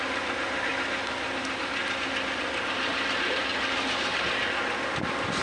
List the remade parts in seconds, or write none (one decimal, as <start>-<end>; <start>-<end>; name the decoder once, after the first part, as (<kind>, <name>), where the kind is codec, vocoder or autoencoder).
3.5-4.2 (vocoder, BigVGAN v2)